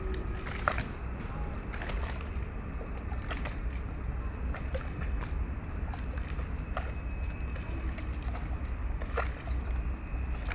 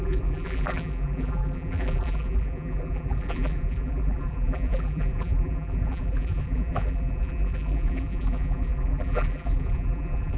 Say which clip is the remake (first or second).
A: second